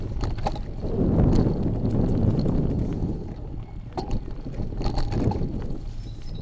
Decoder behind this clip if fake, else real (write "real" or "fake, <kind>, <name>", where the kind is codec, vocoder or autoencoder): real